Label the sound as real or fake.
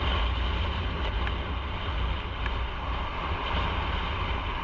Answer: real